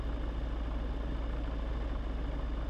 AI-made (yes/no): no